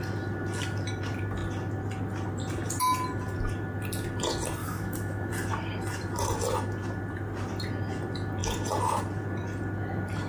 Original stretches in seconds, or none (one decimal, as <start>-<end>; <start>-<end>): 0.0-4.6; 5.3-10.3